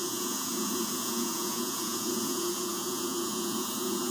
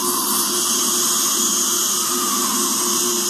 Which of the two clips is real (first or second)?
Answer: second